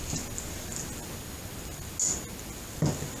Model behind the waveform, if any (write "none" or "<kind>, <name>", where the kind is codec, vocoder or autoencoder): none